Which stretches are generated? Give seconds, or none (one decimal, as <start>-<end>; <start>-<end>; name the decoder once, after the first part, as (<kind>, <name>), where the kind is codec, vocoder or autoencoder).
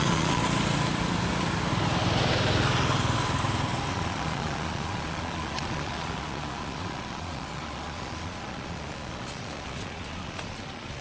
0.0-0.4 (vocoder, Vocos); 3.9-11.0